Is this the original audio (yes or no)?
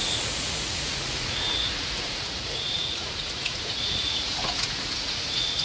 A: no